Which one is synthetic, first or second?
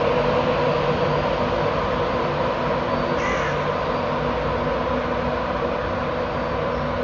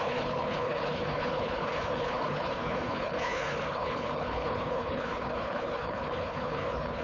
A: second